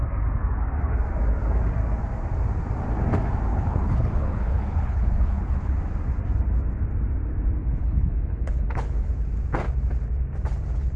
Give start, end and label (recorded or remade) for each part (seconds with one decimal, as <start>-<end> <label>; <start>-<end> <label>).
0.0-3.5 recorded; 3.5-5.8 remade; 5.8-7.6 recorded; 7.6-9.1 remade; 9.1-11.0 recorded